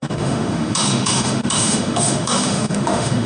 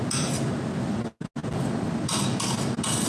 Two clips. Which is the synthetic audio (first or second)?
first